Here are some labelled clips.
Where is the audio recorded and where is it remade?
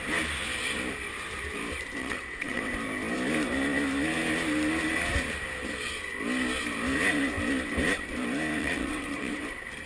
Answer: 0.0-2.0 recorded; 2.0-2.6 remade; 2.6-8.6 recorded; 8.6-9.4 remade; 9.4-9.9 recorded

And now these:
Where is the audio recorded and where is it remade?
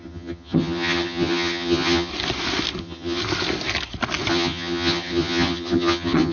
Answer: 0.0-2.1 remade; 2.1-2.8 recorded; 2.8-3.2 remade; 3.2-4.3 recorded; 4.3-6.3 remade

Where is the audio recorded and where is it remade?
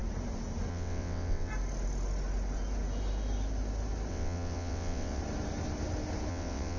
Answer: 0.0-0.7 recorded; 0.7-1.5 remade; 1.5-4.1 recorded; 4.1-5.2 remade; 5.2-6.3 recorded; 6.3-6.8 remade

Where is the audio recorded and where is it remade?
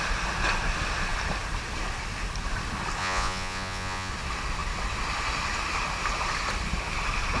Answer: 0.0-3.0 recorded; 3.0-4.1 remade; 4.1-7.4 recorded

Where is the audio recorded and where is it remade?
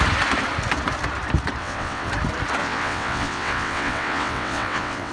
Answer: 0.0-1.6 recorded; 1.6-2.1 remade; 2.1-2.6 recorded; 2.6-5.1 remade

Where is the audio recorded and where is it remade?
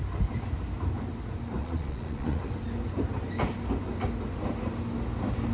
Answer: 0.0-1.6 recorded; 1.6-2.4 remade; 2.4-5.5 recorded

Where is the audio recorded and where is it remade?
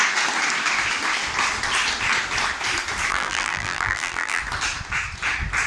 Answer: 0.0-3.1 recorded; 3.1-4.4 remade; 4.4-5.7 recorded